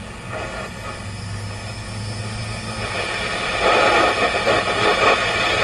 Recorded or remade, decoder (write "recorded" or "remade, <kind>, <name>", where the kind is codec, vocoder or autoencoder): recorded